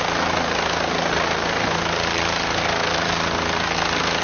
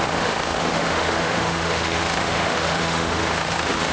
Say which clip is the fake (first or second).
second